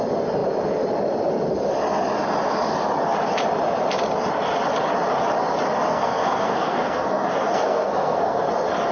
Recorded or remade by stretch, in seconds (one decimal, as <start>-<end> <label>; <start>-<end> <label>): 0.0-5.9 recorded; 5.9-8.5 remade; 8.5-8.9 recorded